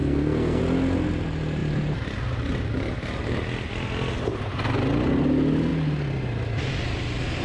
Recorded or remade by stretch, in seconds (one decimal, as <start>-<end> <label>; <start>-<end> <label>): 0.0-0.6 remade; 0.6-7.4 recorded